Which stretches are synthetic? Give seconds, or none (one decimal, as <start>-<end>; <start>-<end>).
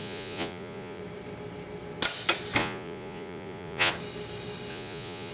0.0-1.0; 2.6-3.9; 4.7-5.3